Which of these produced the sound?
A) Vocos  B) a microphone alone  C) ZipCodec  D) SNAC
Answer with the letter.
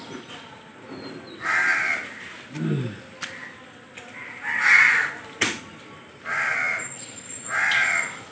B